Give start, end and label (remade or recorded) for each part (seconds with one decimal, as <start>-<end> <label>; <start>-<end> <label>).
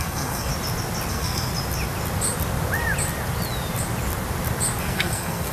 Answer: 0.0-0.5 remade; 0.5-1.1 recorded; 1.1-1.5 remade; 1.5-4.8 recorded; 4.8-5.5 remade